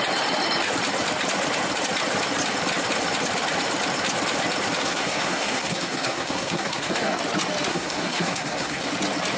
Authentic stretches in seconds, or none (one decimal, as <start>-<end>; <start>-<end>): 0.0-4.8; 7.2-7.7; 8.9-9.4